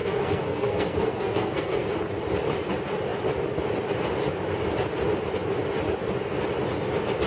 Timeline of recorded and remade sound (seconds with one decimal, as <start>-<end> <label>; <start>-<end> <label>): 0.0-1.9 remade; 1.9-7.3 recorded